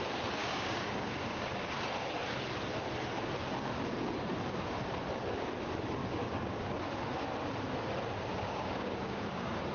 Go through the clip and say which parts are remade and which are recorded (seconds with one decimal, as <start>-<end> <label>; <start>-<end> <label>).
0.0-0.4 recorded; 0.4-1.7 remade; 1.7-6.0 recorded; 6.0-6.7 remade; 6.7-8.3 recorded; 8.3-9.7 remade